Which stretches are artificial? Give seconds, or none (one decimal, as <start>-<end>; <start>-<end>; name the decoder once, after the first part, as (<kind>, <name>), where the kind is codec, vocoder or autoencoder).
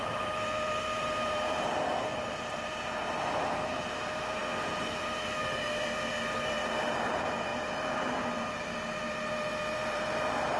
0.0-4.4 (vocoder, BigVGAN v2); 5.0-10.6